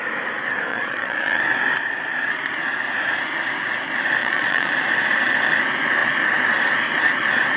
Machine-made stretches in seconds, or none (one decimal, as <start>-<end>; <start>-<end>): 0.7-1.4; 4.2-4.7

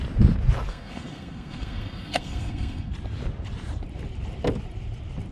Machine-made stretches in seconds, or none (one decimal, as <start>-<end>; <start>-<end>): 0.7-2.9

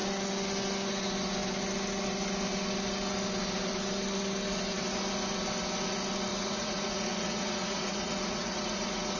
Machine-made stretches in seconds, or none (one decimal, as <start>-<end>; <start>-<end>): 6.3-9.2

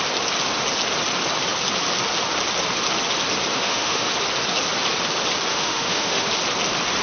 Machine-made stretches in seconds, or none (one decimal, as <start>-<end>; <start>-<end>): 3.5-4.1; 5.5-6.3

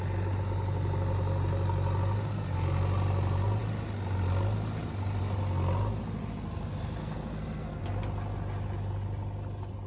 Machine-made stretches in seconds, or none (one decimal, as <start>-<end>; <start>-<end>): 7.0-7.8

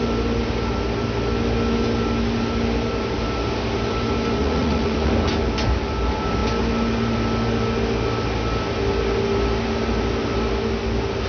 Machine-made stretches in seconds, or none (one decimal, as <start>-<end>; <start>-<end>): 4.4-5.1

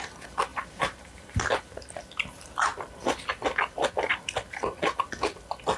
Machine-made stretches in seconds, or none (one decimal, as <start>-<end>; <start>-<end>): 0.5-1.9

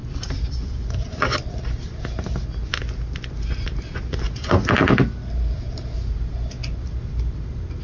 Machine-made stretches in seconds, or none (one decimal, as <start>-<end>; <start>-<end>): none